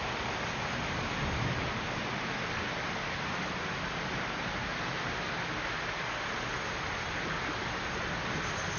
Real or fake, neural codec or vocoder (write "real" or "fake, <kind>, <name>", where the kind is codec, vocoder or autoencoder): real